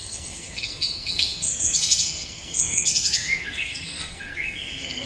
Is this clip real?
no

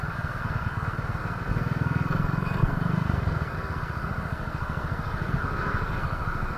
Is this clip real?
no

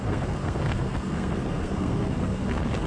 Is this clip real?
no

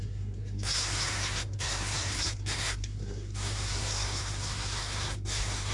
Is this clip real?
no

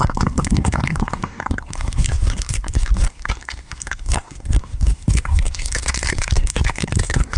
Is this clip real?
no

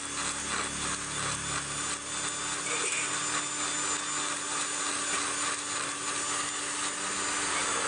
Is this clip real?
yes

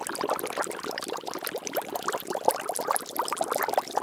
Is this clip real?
yes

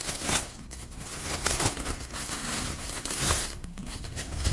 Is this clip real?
no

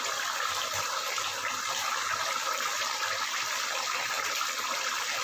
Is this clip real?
yes